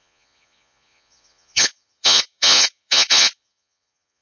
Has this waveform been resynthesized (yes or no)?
yes